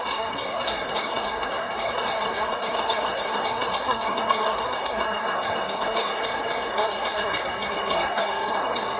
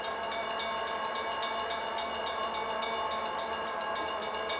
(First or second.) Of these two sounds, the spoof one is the first